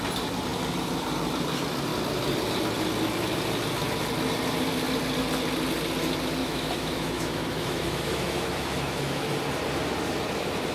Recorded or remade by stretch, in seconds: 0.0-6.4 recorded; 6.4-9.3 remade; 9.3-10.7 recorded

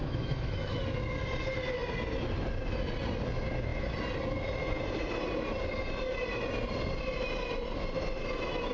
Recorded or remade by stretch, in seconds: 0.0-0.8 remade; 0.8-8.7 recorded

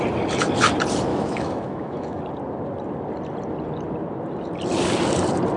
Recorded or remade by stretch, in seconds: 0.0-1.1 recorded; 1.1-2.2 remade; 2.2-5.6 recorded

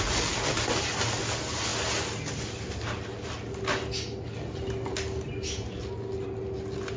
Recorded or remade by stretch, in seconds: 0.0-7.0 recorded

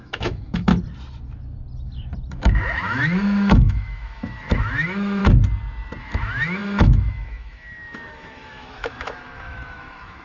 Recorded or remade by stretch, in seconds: 0.0-0.7 remade; 0.7-2.3 recorded; 2.3-5.2 remade; 5.2-6.0 recorded; 6.0-10.2 remade

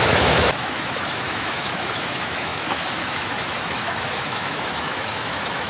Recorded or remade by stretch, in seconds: 0.0-5.7 remade

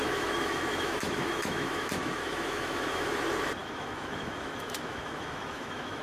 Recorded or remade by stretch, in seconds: 0.0-3.2 remade; 3.2-3.6 recorded; 3.6-6.0 remade

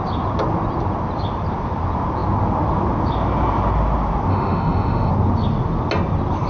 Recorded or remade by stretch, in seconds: 0.0-4.3 recorded; 4.3-5.1 remade; 5.1-6.5 recorded